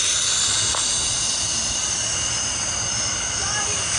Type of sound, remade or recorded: recorded